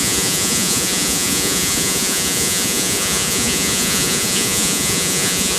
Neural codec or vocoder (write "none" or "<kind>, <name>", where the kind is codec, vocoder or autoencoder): vocoder, Vocos